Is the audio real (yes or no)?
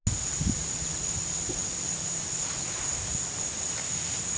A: yes